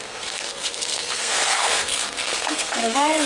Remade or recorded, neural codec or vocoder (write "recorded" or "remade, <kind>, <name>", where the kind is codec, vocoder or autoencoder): remade, codec, SNAC